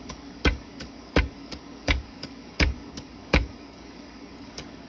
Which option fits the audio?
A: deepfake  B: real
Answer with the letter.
A